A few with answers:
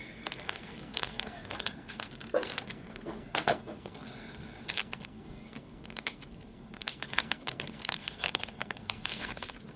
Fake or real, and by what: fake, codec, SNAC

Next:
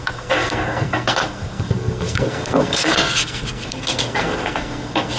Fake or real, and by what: fake, codec, SNAC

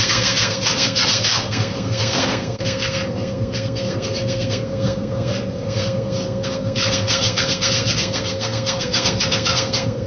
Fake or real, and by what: fake, codec, SNAC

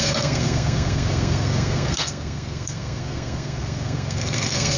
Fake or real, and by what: fake, codec, SNAC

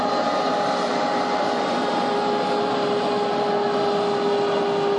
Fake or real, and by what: real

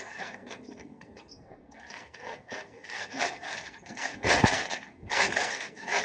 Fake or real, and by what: fake, codec, SNAC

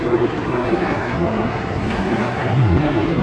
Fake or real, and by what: fake, codec, SNAC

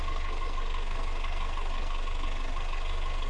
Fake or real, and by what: fake, codec, SNAC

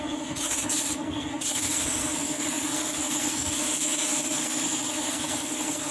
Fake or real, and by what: fake, codec, SNAC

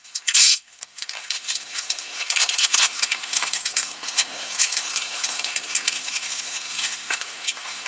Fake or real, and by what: fake, codec, SNAC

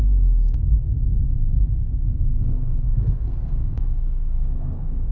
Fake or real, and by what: fake, codec, SNAC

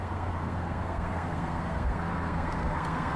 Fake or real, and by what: fake, codec, SNAC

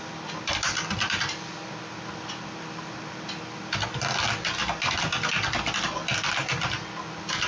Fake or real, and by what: real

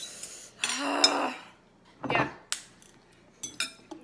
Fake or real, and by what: real